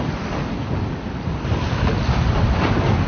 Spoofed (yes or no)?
no